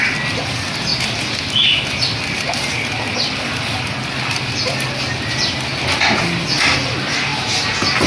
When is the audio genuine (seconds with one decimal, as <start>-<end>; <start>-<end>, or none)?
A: 0.0-8.1